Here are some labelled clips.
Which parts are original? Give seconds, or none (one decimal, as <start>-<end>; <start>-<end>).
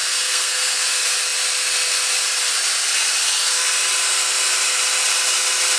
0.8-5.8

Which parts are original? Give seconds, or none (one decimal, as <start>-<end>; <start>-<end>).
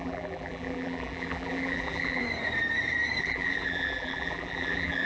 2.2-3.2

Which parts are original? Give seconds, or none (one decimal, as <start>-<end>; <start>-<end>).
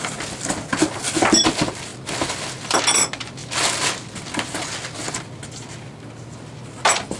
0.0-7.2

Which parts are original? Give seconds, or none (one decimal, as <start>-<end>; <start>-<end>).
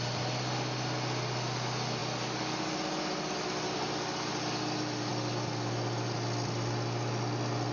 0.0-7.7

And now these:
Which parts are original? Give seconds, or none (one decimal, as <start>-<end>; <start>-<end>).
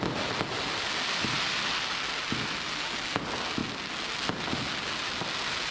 0.0-5.7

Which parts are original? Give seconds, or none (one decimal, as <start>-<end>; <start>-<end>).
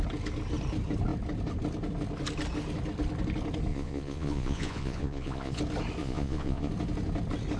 0.0-3.7; 5.6-6.0; 6.7-7.6